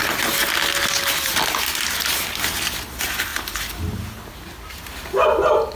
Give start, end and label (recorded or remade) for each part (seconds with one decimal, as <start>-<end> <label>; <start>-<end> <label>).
0.0-5.7 recorded

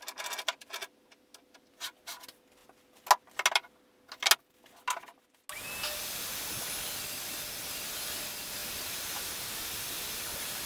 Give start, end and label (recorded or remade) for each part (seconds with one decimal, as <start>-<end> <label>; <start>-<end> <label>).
0.0-8.6 recorded; 8.6-9.7 remade; 9.7-10.7 recorded